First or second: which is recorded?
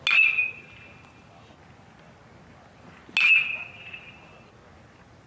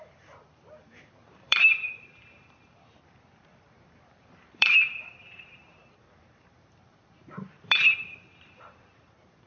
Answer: first